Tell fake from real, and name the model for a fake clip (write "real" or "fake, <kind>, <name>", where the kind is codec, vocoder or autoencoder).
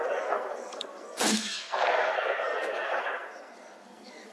fake, codec, SNAC